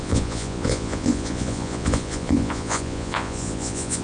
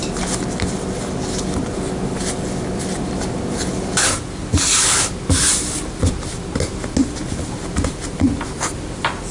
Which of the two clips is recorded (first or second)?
second